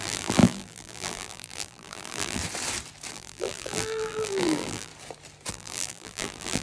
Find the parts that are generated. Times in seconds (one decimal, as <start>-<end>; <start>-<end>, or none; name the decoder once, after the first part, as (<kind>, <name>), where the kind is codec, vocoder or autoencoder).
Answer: 0.0-2.4 (vocoder, BigVGAN v2); 3.1-4.9; 5.5-6.6